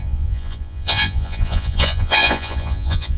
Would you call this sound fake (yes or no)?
yes